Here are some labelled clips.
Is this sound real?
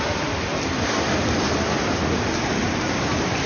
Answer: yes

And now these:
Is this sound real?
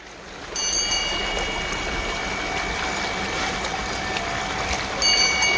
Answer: yes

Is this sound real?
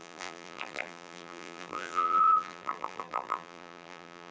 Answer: no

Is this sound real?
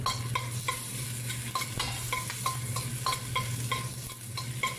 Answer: yes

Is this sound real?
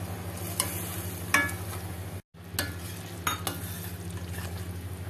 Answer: yes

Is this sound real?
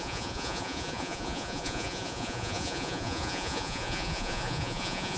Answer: no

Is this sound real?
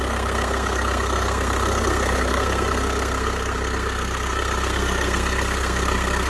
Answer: no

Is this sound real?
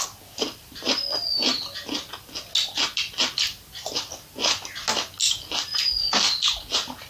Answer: yes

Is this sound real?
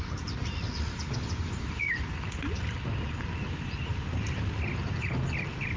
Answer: yes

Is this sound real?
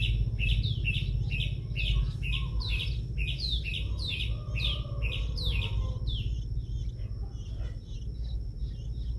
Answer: yes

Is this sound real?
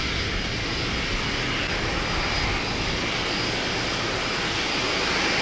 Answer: yes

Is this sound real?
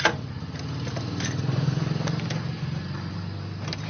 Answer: yes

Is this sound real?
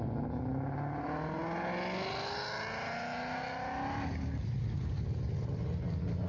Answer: yes